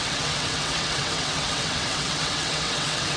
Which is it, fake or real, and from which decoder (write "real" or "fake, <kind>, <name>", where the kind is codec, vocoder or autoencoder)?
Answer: fake, vocoder, WaveNeXt